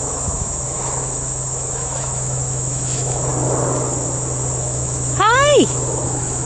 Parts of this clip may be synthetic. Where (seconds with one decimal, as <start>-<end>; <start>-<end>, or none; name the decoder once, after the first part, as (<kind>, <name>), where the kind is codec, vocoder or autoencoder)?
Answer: 0.0-3.3 (autoencoder, DAC-VAE); 4.6-6.5